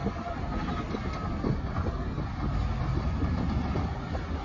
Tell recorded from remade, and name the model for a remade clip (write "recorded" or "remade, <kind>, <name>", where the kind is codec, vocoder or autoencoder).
recorded